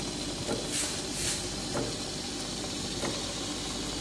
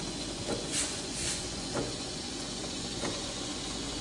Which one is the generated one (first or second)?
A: second